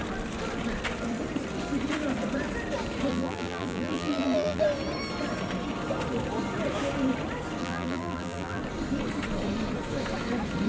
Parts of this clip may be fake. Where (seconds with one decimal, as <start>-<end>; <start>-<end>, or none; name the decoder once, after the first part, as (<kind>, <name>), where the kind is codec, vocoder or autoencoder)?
3.1-4.6 (vocoder, BigVGAN v2); 7.6-8.6